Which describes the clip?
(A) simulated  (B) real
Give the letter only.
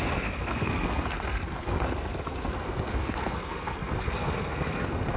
A